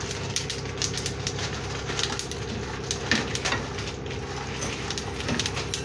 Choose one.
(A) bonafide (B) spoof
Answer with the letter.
A